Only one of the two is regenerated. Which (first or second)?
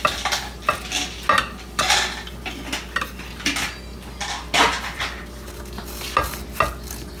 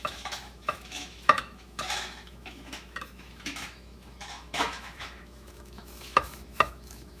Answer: second